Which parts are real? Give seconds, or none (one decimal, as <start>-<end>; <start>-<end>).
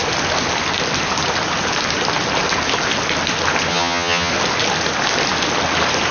0.0-3.7; 4.3-6.1